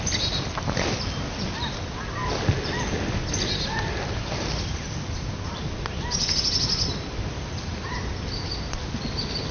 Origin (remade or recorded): recorded